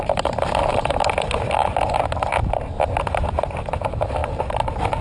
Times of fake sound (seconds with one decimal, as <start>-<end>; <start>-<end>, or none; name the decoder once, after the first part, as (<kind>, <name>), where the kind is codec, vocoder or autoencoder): 0.0-1.0 (vocoder, BigVGAN v2); 3.8-4.2